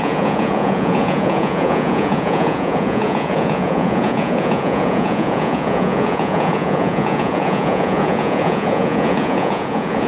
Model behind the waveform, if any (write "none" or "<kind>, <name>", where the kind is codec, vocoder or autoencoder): vocoder, Vocos